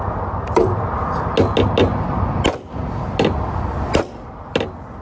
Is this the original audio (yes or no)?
yes